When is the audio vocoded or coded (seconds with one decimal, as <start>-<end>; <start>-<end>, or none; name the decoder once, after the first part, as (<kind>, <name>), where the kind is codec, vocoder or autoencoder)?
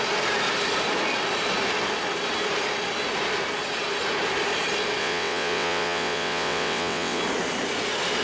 5.0-7.2 (vocoder, WaveNeXt)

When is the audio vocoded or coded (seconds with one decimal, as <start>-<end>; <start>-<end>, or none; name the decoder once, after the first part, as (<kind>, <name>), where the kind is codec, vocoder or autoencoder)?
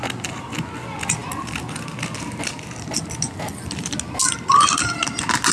none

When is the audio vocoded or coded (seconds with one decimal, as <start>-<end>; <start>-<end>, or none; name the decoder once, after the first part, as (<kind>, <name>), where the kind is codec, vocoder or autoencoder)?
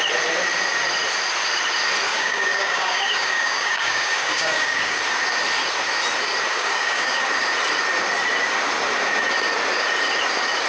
2.1-5.0 (codec, DAC); 6.5-7.2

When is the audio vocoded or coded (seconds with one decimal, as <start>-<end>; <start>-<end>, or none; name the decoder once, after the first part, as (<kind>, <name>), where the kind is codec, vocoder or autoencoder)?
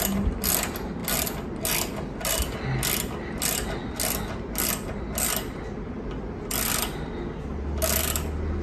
none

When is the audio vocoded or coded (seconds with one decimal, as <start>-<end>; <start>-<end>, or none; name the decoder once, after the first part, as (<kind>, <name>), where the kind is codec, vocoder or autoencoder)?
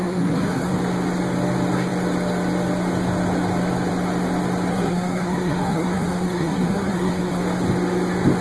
0.0-0.7 (codec, SNAC); 4.7-7.4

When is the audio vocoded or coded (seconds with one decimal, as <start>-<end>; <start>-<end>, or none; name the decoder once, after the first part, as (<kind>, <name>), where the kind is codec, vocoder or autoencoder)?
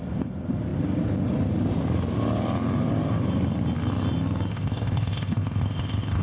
4.5-6.2 (codec, ZipCodec)